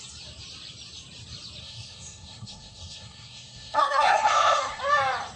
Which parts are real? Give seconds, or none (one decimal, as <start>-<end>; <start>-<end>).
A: 0.0-1.6; 4.8-5.4